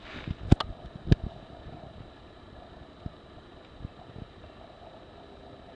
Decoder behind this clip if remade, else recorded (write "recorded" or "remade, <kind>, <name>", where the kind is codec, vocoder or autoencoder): recorded